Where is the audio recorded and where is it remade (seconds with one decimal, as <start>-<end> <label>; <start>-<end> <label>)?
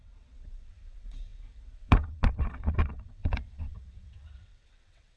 0.0-5.2 remade